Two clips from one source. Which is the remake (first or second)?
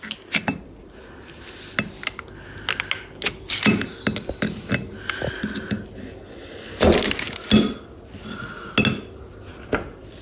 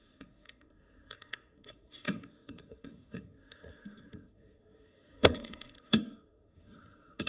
second